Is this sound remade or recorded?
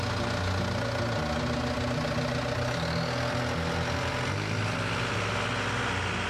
recorded